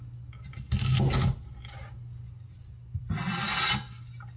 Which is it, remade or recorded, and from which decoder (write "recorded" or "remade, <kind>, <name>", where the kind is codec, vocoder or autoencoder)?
recorded